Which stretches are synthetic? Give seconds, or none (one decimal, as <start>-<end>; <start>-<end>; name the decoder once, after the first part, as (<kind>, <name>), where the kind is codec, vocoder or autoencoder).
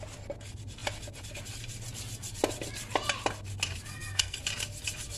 3.9-4.4 (codec, SNAC)